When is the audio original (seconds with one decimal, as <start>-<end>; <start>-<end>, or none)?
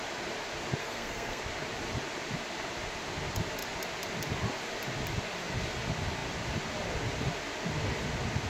0.0-0.8; 1.4-8.5